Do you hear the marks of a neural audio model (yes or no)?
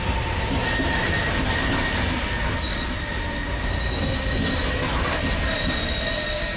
no